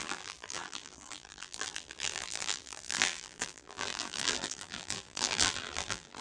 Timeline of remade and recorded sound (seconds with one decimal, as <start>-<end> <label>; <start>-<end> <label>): 0.0-6.2 remade